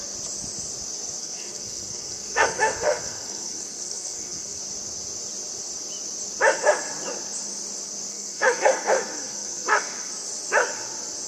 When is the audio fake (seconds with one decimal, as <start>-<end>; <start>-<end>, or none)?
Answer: 1.2-4.6; 8.1-10.1